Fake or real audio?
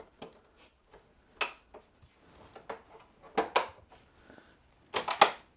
real